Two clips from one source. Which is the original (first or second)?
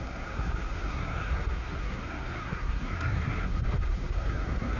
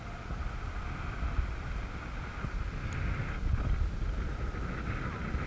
second